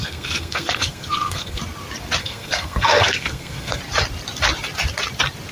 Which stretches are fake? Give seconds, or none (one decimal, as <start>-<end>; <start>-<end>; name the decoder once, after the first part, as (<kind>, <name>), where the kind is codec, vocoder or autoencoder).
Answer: 0.0-1.6 (codec, SNAC); 2.2-3.8